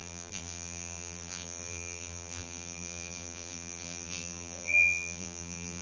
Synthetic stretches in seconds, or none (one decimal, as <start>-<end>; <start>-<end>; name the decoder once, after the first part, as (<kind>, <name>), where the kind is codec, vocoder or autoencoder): 0.0-5.8 (vocoder, BigVGAN v2)